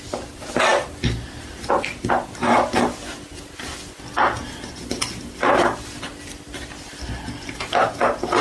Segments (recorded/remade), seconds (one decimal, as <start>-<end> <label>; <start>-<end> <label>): 0.0-8.4 recorded

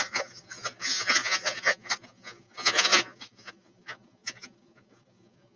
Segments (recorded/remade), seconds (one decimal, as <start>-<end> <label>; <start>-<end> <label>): 0.0-5.6 remade

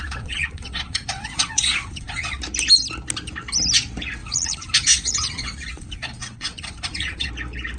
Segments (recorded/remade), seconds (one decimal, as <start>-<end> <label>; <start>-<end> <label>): 0.0-2.4 remade; 2.4-4.2 recorded; 4.2-7.3 remade; 7.3-7.8 recorded

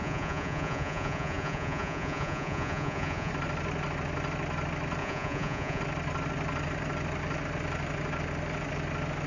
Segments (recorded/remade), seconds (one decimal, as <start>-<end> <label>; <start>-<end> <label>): 0.0-3.3 remade; 3.3-5.0 recorded; 5.0-5.8 remade; 5.8-9.3 recorded

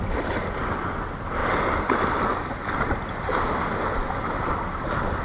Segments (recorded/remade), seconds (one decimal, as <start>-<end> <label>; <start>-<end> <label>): 0.0-5.2 recorded

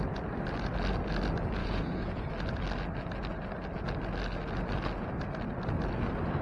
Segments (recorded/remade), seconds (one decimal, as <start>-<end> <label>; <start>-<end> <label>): 0.0-1.6 recorded; 1.6-2.3 remade; 2.3-6.4 recorded